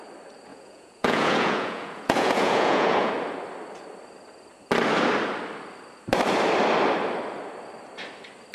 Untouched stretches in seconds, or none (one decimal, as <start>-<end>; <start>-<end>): 0.0-0.5; 3.1-8.5